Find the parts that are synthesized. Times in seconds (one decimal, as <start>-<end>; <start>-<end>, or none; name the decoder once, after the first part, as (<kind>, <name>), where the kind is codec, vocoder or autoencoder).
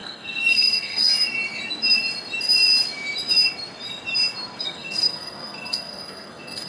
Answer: 0.0-1.1 (codec, SNAC); 4.6-6.7